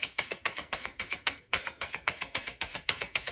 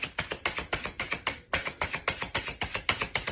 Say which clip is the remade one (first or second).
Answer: first